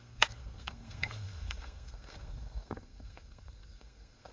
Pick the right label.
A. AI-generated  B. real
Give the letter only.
A